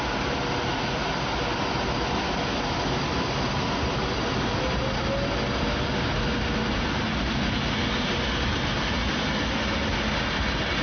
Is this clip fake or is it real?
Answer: real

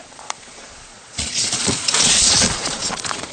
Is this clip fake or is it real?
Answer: fake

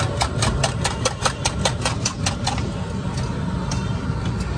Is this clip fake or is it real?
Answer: real